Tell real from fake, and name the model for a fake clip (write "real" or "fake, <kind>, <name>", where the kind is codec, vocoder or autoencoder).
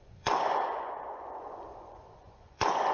fake, vocoder, Vocos